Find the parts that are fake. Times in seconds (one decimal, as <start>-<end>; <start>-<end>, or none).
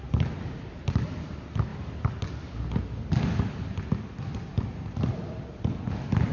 none